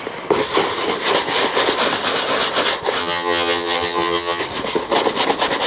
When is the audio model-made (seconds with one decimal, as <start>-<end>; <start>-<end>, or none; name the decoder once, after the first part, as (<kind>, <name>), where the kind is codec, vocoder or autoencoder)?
3.0-4.4 (vocoder, HiFi-GAN)